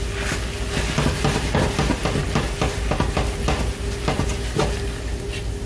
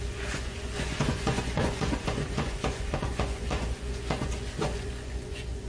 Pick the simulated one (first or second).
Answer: second